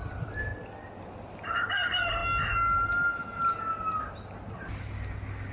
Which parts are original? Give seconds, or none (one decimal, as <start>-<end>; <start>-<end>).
0.0-5.5